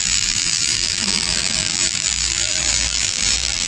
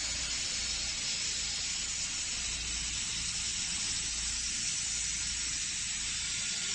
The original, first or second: second